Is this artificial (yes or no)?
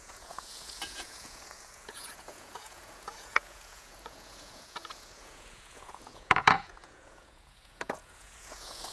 yes